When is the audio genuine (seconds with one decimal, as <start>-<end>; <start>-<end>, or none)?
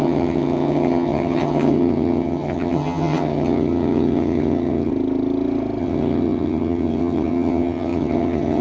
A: 4.9-5.8